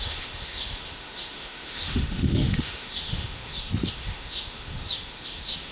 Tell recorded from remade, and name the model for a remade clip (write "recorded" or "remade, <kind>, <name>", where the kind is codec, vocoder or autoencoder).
remade, autoencoder, DAC-VAE